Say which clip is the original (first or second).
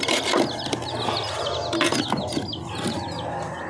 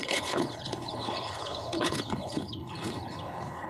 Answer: first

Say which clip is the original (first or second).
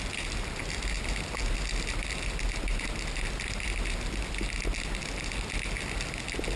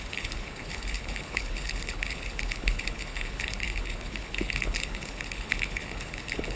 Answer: first